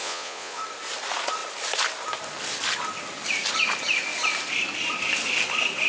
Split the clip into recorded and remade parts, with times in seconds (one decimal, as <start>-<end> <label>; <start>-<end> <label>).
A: 0.0-0.6 remade; 0.6-5.9 recorded